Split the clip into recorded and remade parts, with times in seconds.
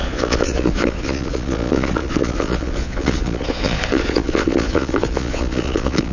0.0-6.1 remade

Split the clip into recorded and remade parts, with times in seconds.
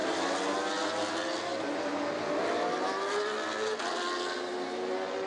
0.0-5.3 recorded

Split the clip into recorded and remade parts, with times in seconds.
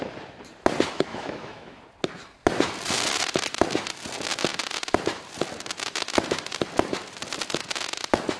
0.0-1.1 recorded; 1.1-1.8 remade; 1.8-8.4 recorded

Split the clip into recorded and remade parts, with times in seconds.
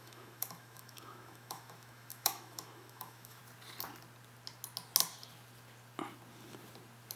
0.0-3.4 remade; 3.4-7.2 recorded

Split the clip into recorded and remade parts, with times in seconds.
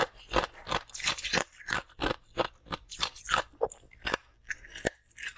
0.0-5.4 recorded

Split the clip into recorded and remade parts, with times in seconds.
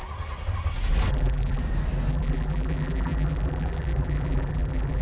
0.0-1.1 recorded; 1.1-1.6 remade; 1.6-2.1 recorded; 2.1-5.0 remade